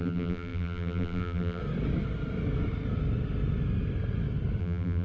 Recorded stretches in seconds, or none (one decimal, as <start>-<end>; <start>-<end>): 1.6-4.6